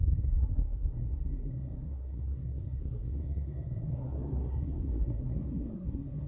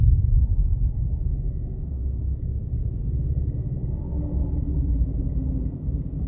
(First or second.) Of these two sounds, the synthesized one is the first